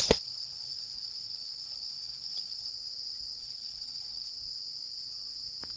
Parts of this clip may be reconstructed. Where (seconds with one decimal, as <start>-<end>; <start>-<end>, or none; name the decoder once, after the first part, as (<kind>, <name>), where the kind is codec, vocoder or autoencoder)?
0.0-2.7 (codec, HILCodec); 3.4-4.3